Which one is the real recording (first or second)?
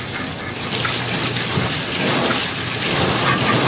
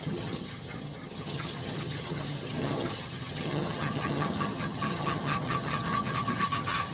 first